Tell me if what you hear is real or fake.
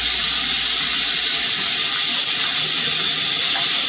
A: real